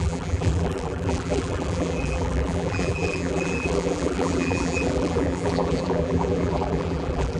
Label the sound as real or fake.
fake